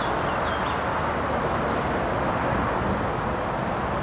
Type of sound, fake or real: real